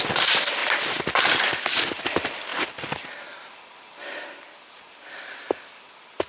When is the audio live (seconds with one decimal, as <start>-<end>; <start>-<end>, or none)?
0.0-6.3